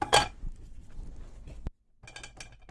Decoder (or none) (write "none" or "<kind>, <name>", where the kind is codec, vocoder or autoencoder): none